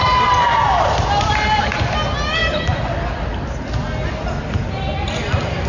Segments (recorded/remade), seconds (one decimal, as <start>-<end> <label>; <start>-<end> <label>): 0.0-5.7 recorded